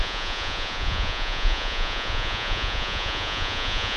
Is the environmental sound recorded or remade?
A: remade